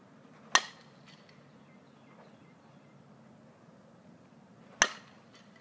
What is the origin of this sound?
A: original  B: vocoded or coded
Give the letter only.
A